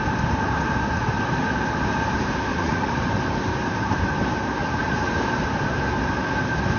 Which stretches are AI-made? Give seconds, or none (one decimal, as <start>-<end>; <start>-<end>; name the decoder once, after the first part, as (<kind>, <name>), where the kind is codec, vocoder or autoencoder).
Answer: 2.5-3.0 (vocoder, Vocos); 4.6-5.2